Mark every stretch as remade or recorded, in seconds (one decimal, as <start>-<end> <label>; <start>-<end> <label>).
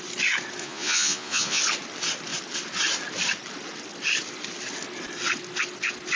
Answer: 0.0-0.6 recorded; 0.6-1.6 remade; 1.6-6.2 recorded